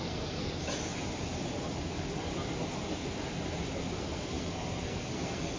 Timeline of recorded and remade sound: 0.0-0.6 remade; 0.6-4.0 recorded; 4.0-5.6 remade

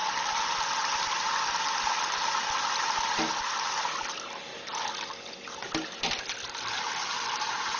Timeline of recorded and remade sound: 0.0-7.8 recorded

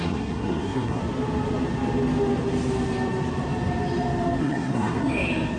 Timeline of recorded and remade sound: 0.0-1.0 remade; 1.0-4.4 recorded; 4.4-5.0 remade; 5.0-5.6 recorded

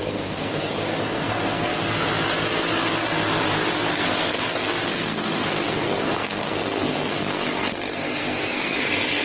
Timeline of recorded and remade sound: 0.0-1.7 remade; 1.7-3.9 recorded; 3.9-9.2 remade